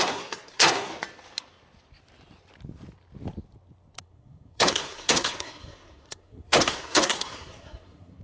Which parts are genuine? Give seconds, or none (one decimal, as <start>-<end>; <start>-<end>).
0.9-4.0